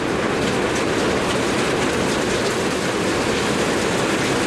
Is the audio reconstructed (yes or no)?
no